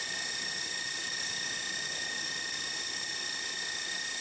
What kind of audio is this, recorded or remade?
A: recorded